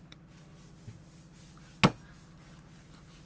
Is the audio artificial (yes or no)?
no